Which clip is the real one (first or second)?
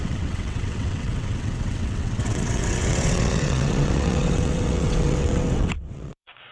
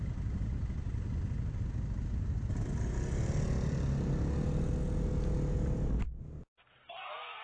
second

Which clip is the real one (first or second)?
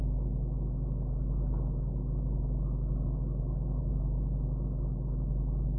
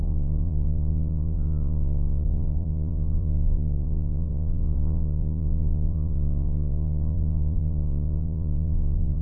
first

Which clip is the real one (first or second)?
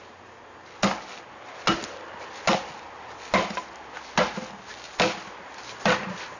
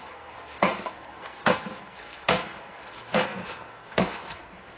first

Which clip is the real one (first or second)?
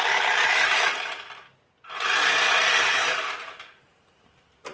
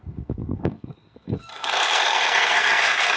first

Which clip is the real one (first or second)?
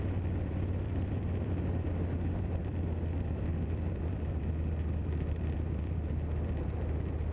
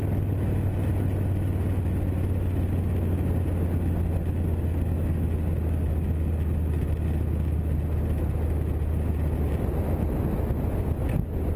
second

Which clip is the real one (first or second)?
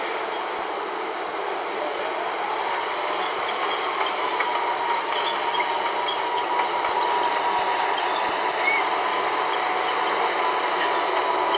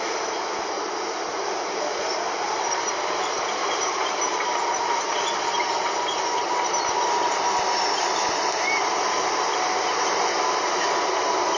first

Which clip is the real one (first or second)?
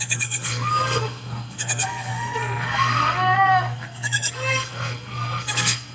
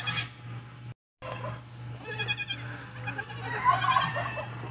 second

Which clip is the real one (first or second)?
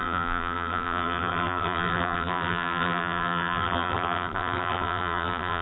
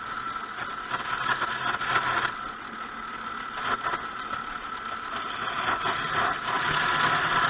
second